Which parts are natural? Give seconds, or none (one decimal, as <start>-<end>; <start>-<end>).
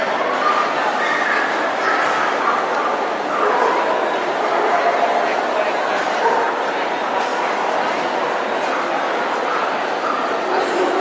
0.0-11.0